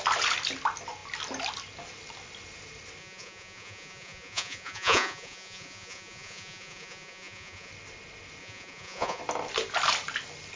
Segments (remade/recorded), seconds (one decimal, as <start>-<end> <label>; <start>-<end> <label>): 0.0-3.0 recorded; 3.0-7.7 remade; 7.7-8.4 recorded; 8.4-9.2 remade; 9.2-10.6 recorded